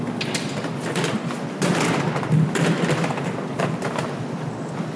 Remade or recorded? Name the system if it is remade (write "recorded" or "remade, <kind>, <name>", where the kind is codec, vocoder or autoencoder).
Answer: recorded